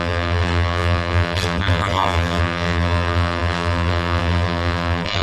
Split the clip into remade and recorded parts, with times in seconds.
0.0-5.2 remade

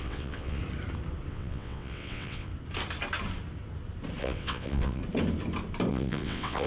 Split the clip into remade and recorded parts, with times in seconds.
0.0-0.6 remade; 0.6-1.3 recorded; 1.3-2.5 remade; 2.5-4.2 recorded; 4.2-5.0 remade; 5.0-5.9 recorded; 5.9-6.7 remade